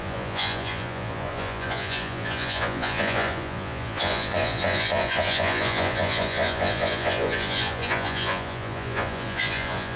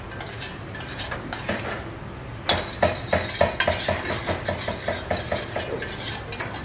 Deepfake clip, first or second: first